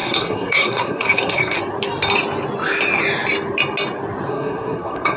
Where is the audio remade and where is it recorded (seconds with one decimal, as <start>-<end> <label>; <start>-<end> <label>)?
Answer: 0.0-1.6 remade; 1.6-4.3 recorded; 4.3-5.2 remade

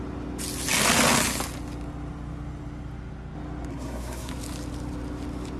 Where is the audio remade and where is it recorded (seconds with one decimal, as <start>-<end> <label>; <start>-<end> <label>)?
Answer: 0.0-3.7 recorded; 3.7-4.3 remade; 4.3-5.6 recorded

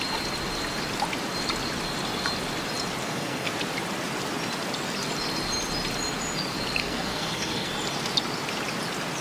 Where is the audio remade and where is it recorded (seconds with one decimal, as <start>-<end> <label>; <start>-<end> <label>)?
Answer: 0.0-3.0 recorded; 3.0-3.5 remade; 3.5-6.8 recorded; 6.8-7.7 remade; 7.7-9.2 recorded

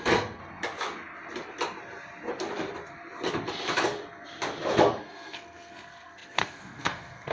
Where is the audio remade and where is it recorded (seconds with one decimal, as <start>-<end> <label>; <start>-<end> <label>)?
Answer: 0.0-0.4 remade; 0.4-4.8 recorded; 4.8-7.3 remade

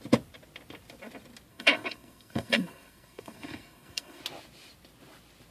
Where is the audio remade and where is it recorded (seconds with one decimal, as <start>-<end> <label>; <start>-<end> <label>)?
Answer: 0.0-1.5 recorded; 1.5-4.2 remade; 4.2-5.5 recorded

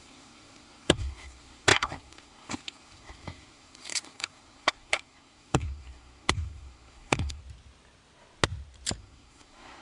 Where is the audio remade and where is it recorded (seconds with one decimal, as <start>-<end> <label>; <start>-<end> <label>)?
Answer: 0.0-7.4 remade; 7.4-9.0 recorded; 9.0-9.8 remade

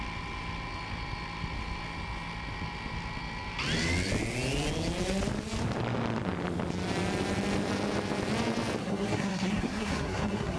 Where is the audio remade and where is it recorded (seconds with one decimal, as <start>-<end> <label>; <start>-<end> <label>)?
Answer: 0.0-8.8 recorded; 8.8-10.6 remade